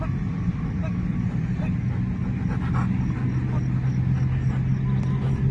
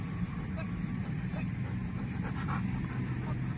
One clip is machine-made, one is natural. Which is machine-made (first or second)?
second